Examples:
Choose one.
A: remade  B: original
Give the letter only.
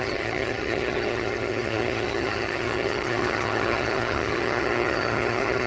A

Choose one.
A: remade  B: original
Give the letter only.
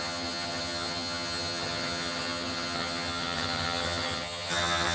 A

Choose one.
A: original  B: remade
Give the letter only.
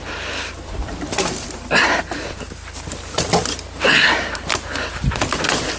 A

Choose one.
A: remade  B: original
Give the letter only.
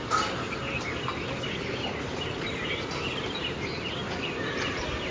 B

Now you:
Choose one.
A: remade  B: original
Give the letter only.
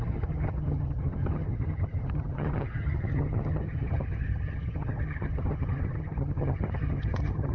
A